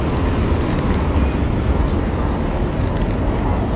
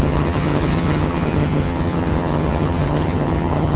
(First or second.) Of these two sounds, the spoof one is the second